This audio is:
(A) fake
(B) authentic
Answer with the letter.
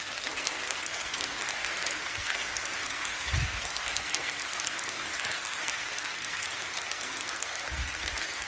A